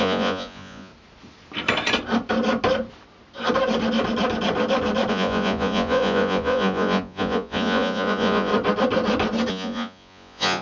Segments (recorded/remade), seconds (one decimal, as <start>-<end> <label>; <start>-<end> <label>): 0.0-0.9 remade; 0.9-5.1 recorded; 5.1-8.5 remade; 8.5-9.5 recorded; 9.5-10.6 remade